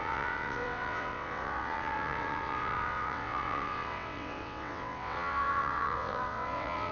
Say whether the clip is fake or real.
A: fake